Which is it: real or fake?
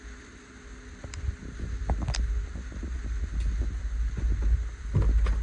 real